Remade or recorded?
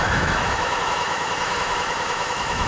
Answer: remade